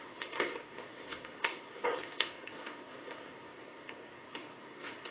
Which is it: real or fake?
fake